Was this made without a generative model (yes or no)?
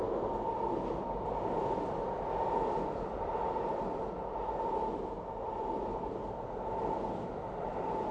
yes